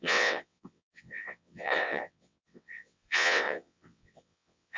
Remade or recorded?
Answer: remade